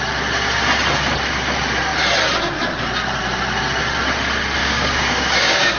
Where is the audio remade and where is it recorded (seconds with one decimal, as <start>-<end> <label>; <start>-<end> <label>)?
0.0-4.6 recorded; 4.6-5.8 remade